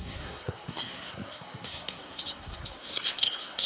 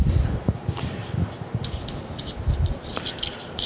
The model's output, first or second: first